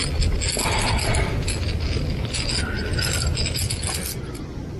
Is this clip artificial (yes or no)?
no